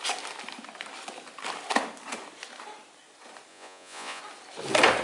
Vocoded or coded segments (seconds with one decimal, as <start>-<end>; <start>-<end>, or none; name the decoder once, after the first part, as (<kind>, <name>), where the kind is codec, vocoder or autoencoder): 3.5-4.2 (vocoder, Vocos)

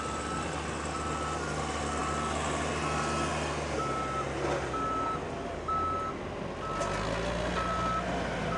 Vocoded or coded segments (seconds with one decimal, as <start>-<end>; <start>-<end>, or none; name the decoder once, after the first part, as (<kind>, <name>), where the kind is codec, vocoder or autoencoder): none

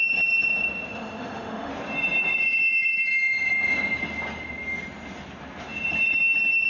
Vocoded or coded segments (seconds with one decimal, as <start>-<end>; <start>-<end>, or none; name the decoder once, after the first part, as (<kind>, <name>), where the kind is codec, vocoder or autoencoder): 0.9-1.7 (autoencoder, DAC-VAE)

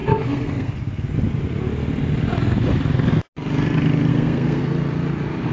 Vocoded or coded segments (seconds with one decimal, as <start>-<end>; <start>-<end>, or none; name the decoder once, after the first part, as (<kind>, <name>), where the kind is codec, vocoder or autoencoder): 0.0-0.7 (codec, SNAC); 4.1-4.6

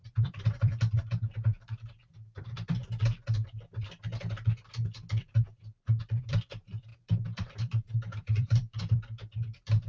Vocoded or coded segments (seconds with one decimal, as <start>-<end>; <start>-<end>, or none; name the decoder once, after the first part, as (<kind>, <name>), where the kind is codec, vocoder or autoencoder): 0.0-2.8 (vocoder, BigVGAN v2); 5.2-9.9

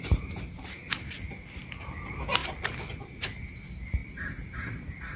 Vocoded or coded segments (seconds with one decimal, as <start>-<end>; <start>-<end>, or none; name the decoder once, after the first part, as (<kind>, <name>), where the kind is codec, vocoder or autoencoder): 0.0-0.8 (vocoder, BigVGAN v2); 2.0-2.4; 3.0-5.2

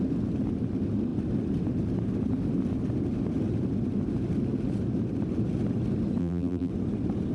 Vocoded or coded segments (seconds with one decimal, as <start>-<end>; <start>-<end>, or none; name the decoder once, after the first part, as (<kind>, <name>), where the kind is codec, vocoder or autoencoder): 6.2-6.7 (vocoder, BigVGAN v2)